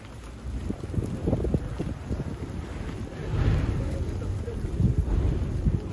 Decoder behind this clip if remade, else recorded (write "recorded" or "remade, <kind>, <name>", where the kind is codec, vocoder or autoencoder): recorded